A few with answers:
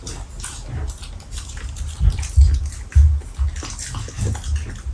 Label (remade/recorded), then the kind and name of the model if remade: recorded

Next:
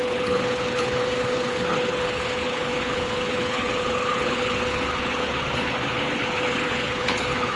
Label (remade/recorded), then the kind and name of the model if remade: remade, codec, HILCodec